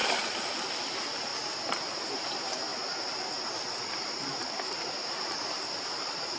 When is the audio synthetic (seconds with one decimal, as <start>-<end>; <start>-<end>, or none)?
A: 0.8-1.3; 1.9-2.7; 4.4-6.4